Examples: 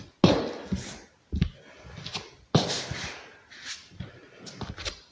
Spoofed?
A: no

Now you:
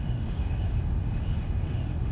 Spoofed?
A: yes